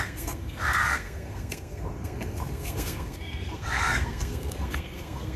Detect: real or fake fake